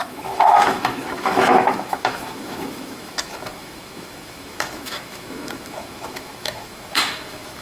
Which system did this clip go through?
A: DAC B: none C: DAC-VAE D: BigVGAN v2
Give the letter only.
C